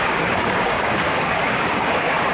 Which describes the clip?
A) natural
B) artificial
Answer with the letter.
B